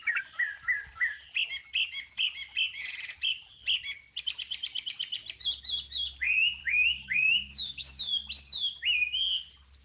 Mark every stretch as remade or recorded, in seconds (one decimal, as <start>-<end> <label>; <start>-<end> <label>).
0.0-6.6 recorded; 6.6-8.0 remade; 8.0-9.8 recorded